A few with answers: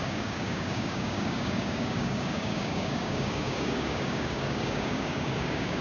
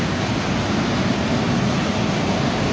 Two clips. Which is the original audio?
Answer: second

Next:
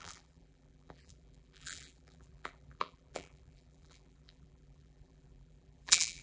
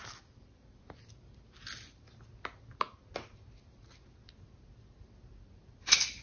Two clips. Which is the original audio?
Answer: second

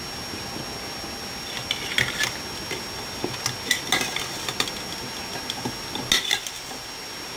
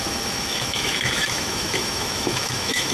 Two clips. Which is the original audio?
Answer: first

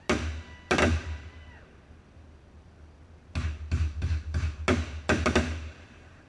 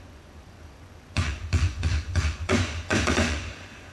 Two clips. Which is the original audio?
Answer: first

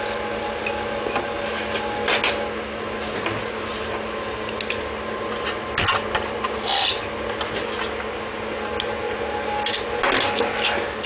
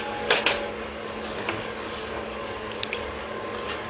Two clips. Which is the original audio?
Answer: first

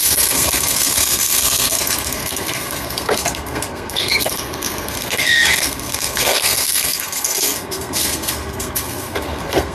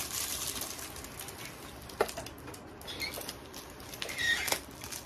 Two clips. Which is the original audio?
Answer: second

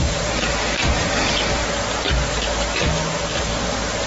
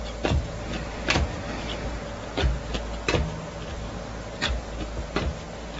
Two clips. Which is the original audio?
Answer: second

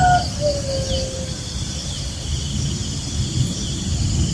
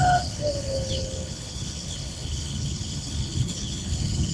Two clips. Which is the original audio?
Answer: first